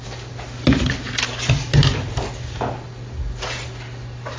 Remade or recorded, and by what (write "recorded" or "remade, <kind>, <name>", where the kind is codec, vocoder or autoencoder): recorded